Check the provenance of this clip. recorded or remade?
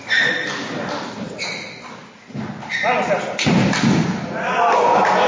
recorded